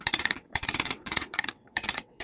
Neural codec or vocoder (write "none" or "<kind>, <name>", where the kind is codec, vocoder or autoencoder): vocoder, WaveNeXt